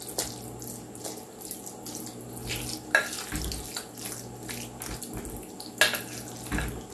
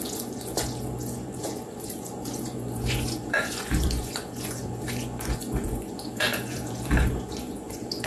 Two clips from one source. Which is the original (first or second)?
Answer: first